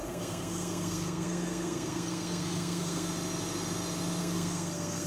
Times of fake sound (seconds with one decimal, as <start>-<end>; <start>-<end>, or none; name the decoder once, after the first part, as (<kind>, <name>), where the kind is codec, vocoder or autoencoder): 0.0-3.1 (codec, SNAC); 4.2-5.1